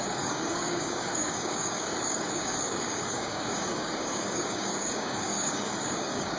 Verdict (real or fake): fake